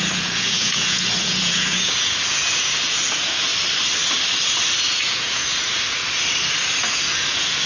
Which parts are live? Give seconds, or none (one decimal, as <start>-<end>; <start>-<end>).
3.5-4.9; 6.0-6.9